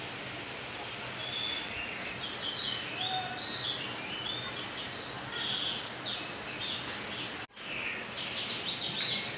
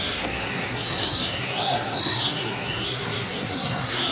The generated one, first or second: second